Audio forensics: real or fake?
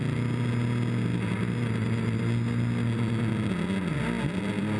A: real